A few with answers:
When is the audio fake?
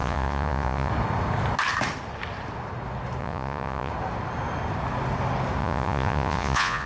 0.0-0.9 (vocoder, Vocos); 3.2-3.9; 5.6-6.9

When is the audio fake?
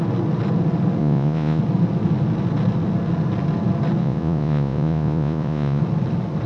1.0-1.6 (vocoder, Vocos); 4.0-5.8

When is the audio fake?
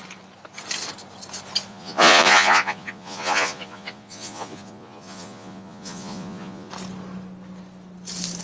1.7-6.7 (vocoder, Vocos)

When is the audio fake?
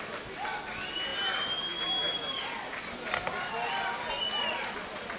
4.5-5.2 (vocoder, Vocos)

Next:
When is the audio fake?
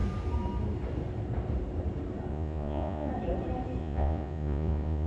2.3-3.1 (vocoder, Vocos); 3.8-5.1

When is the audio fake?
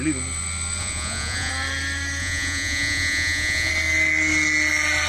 0.8-1.5 (vocoder, Vocos); 2.2-3.7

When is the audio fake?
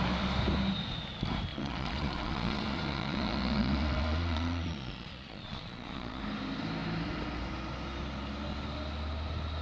1.5-6.2 (vocoder, Vocos)